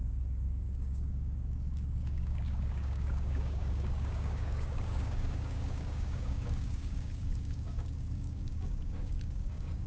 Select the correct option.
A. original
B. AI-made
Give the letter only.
B